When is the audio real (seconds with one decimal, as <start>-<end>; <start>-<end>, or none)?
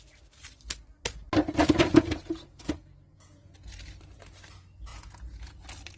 0.0-1.6; 3.5-4.9; 5.4-6.0